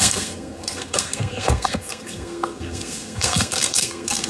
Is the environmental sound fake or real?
fake